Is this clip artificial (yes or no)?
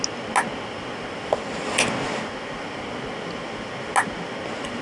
no